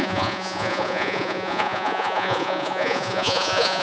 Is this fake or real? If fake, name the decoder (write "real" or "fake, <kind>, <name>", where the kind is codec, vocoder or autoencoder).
fake, vocoder, Vocos